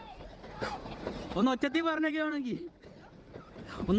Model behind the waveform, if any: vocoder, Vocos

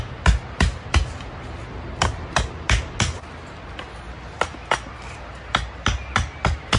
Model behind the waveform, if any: none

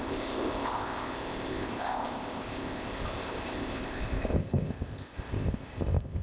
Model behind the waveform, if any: codec, ZipCodec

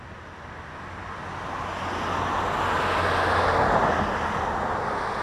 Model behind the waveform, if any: none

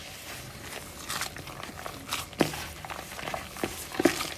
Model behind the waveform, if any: none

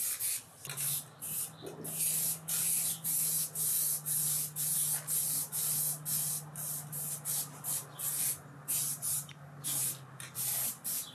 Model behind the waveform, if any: none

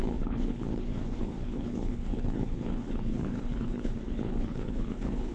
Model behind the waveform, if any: codec, HILCodec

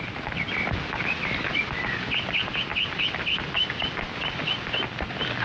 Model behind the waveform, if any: none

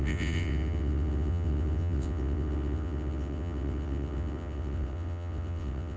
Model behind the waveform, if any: vocoder, WaveNeXt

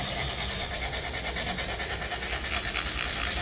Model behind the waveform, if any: none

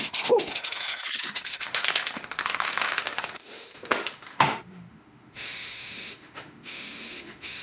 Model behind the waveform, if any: autoencoder, DAC-VAE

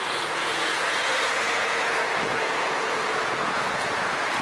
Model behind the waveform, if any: vocoder, Vocos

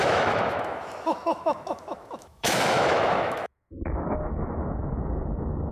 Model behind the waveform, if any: autoencoder, DAC-VAE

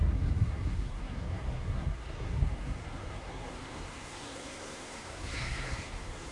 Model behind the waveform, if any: codec, SNAC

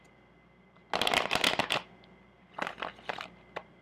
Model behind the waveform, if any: none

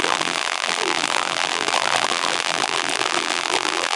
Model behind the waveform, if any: vocoder, BigVGAN v2